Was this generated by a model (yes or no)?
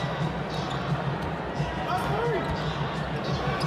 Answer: no